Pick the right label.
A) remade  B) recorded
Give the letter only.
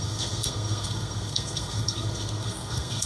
A